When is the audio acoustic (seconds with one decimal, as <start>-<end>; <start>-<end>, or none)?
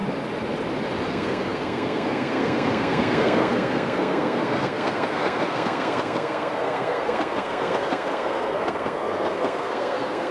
0.0-1.1